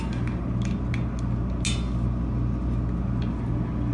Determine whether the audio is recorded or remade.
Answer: recorded